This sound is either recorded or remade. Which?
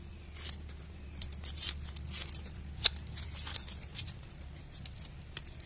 recorded